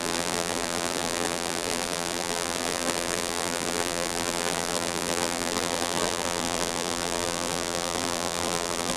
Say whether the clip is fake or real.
fake